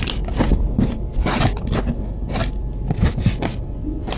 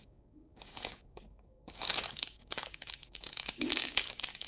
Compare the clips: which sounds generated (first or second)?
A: second